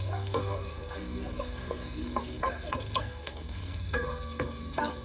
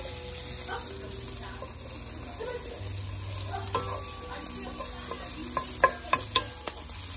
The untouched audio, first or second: second